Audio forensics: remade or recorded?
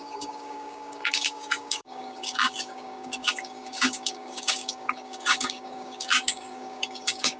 remade